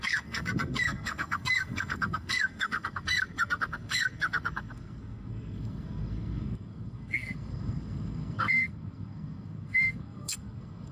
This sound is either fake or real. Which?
fake